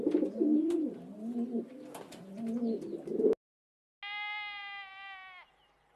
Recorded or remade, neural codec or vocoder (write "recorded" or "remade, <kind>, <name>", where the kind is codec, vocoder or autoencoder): recorded